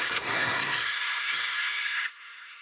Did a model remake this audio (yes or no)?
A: yes